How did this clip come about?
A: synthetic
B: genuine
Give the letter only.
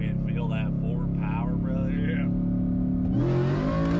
B